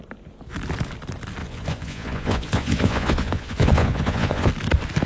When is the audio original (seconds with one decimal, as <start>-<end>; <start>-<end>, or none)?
0.0-1.4; 4.5-5.1